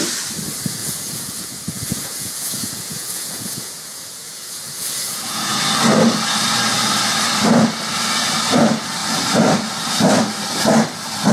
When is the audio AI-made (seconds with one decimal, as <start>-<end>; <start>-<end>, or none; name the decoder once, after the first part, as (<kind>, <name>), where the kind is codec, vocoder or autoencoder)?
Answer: 0.8-5.6 (vocoder, Vocos)